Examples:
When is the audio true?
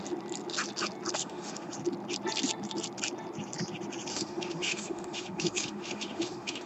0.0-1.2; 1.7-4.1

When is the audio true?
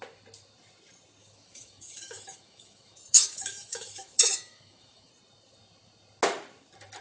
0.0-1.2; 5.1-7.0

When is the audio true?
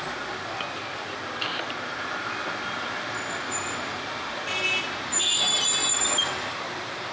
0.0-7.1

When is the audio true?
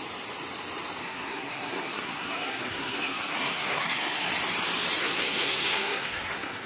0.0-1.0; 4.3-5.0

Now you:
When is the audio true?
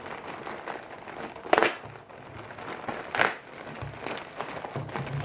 0.0-5.2